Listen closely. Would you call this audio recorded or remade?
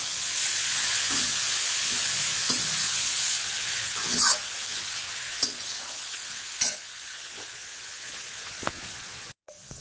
remade